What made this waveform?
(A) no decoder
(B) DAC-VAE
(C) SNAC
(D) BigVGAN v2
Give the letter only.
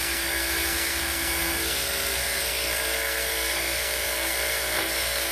C